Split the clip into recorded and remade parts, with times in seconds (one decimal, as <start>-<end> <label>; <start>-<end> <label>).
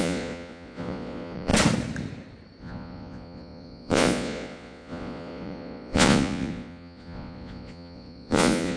0.0-1.5 remade; 1.5-2.6 recorded; 2.6-8.8 remade